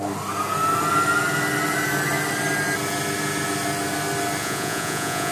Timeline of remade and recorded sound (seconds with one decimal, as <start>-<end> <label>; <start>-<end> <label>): 0.0-4.4 recorded; 4.4-5.3 remade